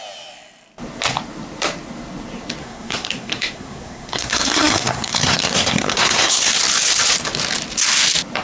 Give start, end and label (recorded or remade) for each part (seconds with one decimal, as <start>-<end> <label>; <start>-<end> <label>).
0.0-2.6 recorded; 2.6-6.5 remade; 6.5-8.4 recorded